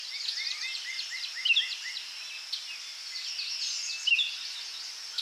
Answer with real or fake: real